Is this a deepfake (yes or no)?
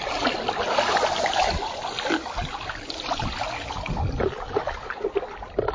no